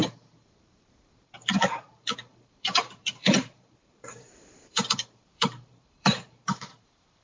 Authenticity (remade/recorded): remade